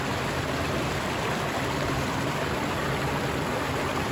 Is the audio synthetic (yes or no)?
no